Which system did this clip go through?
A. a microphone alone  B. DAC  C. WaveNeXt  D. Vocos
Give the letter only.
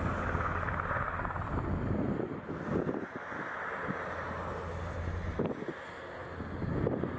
A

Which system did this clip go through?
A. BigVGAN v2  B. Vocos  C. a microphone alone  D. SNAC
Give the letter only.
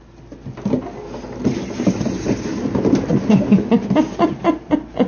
C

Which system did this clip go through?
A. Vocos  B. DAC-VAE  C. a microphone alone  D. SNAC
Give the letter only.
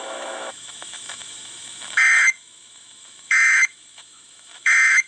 B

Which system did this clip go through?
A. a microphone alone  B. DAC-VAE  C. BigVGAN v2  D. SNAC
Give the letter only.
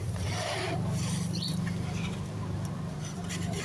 C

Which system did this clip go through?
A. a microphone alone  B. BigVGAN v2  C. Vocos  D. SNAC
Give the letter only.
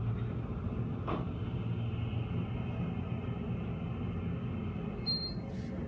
A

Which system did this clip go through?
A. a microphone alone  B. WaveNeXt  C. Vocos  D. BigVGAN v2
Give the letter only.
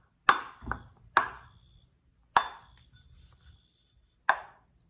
A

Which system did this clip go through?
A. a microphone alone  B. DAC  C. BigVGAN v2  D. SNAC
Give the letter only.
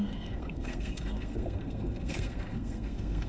D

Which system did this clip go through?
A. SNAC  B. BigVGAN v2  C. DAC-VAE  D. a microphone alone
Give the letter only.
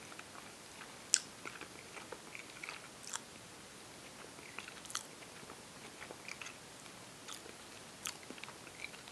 D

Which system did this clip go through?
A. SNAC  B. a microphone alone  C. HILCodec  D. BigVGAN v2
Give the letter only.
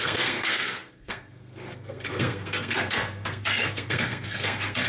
A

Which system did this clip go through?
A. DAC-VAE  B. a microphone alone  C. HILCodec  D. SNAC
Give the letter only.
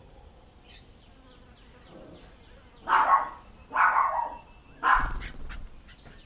B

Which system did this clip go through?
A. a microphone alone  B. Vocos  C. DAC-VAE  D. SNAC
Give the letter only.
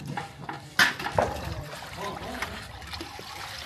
A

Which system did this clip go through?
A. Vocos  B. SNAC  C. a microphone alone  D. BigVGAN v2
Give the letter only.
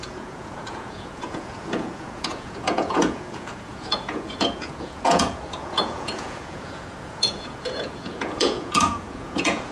A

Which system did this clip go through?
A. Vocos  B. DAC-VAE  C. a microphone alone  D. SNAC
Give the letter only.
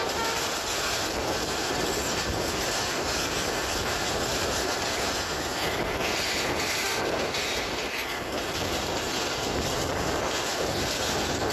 C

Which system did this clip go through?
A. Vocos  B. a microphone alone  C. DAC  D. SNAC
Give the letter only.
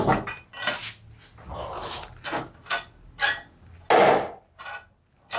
B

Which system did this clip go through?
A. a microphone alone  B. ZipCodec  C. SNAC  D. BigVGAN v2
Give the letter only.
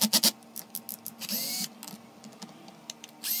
A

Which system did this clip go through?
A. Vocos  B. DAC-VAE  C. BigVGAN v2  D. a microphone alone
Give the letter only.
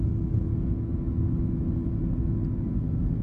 D